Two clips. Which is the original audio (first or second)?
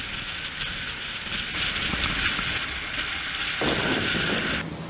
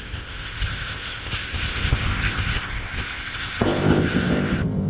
first